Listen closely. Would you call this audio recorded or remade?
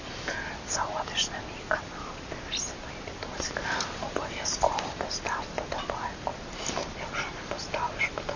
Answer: recorded